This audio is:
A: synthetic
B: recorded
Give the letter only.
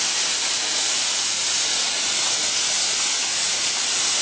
B